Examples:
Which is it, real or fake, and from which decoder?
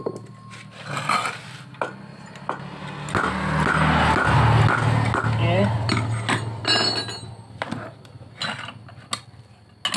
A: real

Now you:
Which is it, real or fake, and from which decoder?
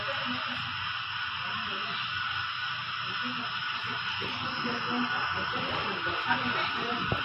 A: real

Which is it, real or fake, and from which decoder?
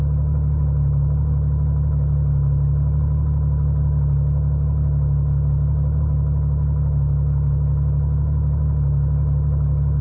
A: real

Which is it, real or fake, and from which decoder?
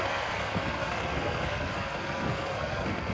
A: fake, codec, SNAC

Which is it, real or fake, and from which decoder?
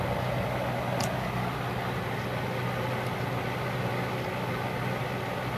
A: real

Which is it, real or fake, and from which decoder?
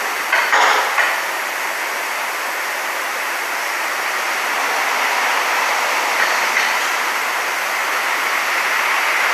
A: real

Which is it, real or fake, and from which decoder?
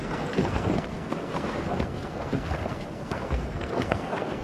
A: fake, codec, SNAC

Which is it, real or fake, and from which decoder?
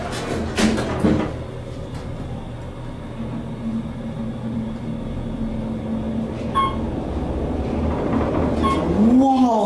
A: real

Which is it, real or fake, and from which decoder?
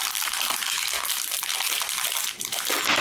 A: real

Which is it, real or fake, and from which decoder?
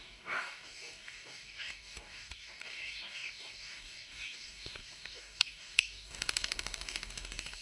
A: fake, codec, DAC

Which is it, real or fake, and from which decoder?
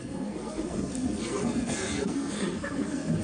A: fake, codec, SNAC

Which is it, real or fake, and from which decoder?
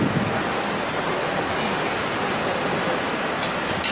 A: real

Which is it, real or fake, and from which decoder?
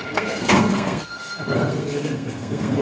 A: fake, codec, SNAC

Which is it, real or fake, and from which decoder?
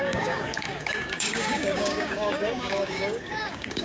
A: fake, codec, DAC